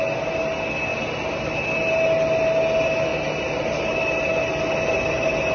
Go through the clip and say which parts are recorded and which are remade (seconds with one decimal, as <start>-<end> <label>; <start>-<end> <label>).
0.0-5.5 recorded